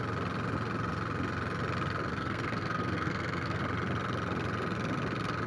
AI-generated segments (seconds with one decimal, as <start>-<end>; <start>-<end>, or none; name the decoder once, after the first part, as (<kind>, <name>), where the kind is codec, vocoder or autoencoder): 2.1-3.6 (codec, SNAC)